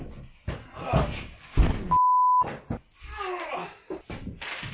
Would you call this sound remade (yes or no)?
no